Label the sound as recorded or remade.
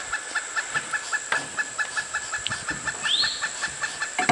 recorded